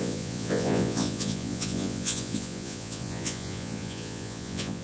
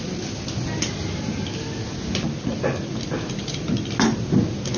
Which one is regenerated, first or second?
first